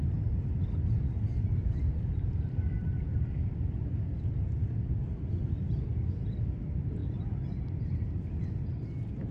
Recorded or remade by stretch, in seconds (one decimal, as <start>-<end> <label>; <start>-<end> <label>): 0.0-1.3 recorded; 1.3-6.0 remade; 6.0-9.3 recorded